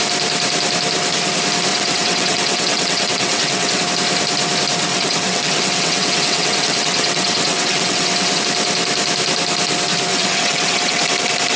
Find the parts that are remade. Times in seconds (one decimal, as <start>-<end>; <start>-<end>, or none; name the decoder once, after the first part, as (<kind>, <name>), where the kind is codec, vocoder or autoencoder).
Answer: 1.7-3.8 (vocoder, WaveNeXt); 4.9-8.4; 10.1-11.0